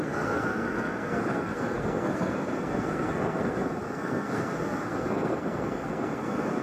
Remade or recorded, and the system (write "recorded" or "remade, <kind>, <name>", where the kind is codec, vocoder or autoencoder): remade, codec, SNAC